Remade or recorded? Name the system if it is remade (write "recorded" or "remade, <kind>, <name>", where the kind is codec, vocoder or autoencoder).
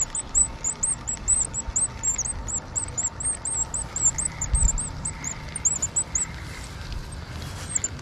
recorded